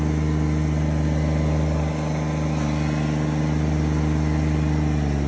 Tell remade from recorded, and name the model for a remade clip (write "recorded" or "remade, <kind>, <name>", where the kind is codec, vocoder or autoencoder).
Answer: recorded